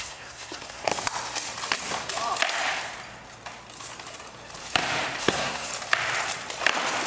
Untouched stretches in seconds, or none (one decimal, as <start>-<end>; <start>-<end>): 0.9-5.2; 5.7-7.1